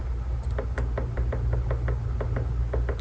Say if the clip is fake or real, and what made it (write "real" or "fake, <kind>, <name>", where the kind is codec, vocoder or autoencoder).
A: real